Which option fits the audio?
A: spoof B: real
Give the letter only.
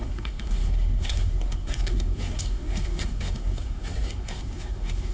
A